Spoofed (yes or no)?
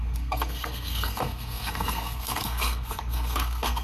yes